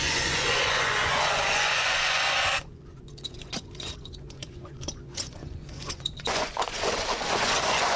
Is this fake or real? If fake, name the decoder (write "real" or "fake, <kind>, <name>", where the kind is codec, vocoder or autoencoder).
fake, vocoder, Vocos